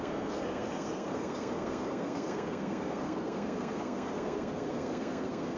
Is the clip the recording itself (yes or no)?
no